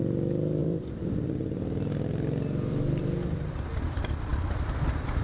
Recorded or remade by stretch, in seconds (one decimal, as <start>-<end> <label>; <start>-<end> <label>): 0.0-5.2 remade